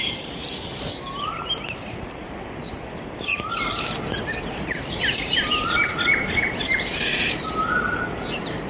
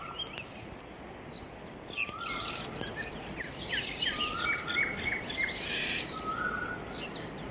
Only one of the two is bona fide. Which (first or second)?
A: second